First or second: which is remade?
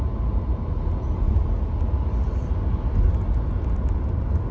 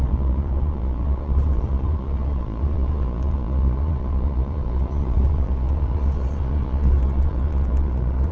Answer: second